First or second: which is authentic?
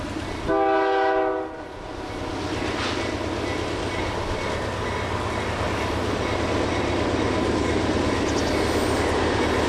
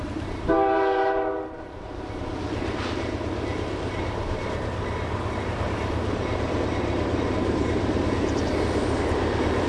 first